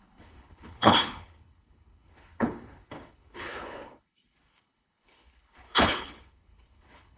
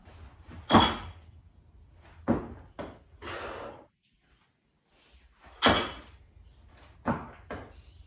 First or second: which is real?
second